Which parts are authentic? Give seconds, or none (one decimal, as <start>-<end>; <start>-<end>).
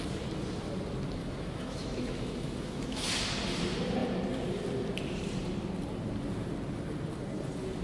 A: 0.0-1.2; 3.1-7.8